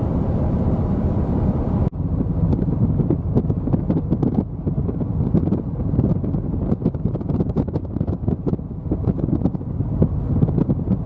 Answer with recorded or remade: remade